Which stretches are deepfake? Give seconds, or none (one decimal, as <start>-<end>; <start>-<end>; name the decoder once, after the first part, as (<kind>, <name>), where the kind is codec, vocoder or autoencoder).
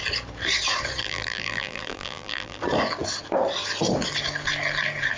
1.0-2.6 (vocoder, BigVGAN v2)